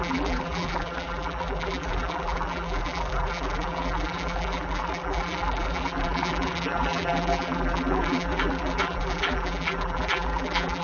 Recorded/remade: remade